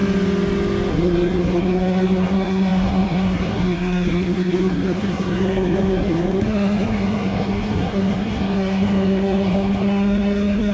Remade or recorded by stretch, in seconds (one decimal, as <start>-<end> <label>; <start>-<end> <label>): 0.0-0.9 recorded; 0.9-10.7 remade